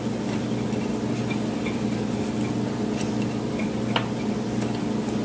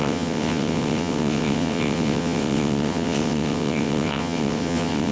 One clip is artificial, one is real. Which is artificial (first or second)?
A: second